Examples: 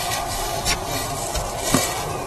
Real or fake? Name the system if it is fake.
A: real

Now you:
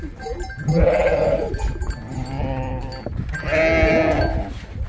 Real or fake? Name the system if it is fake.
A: real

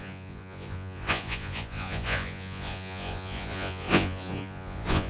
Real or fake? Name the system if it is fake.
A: fake, vocoder, Vocos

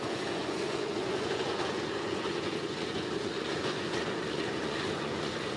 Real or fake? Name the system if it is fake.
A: fake, vocoder, Vocos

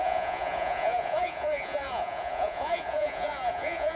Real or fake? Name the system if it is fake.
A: fake, vocoder, Vocos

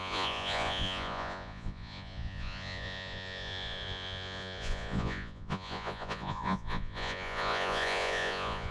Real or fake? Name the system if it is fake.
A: fake, vocoder, Vocos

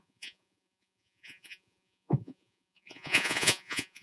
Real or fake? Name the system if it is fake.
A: fake, vocoder, Vocos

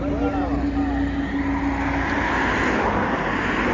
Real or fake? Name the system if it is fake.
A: real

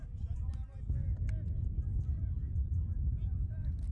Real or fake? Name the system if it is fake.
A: real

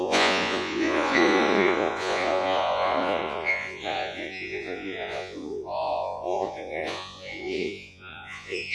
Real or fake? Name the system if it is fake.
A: fake, vocoder, Vocos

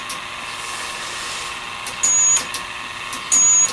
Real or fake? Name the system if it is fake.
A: real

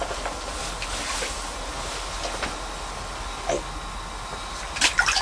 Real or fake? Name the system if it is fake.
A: real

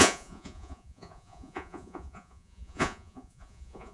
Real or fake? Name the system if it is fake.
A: fake, vocoder, Vocos